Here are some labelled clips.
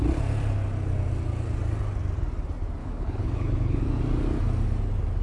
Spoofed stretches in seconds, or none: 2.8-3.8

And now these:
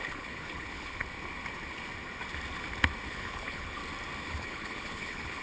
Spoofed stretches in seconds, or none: 0.0-1.0; 3.1-3.8; 4.3-5.4

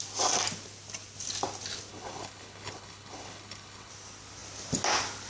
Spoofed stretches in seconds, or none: 1.9-3.9

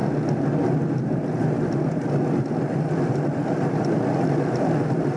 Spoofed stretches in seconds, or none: none

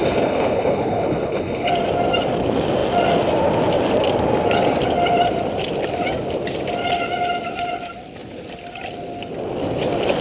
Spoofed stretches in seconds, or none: 0.0-1.7

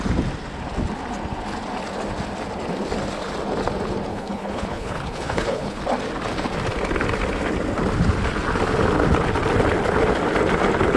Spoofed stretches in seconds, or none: 4.1-5.8